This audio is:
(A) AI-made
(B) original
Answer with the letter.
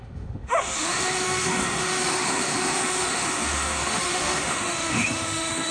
A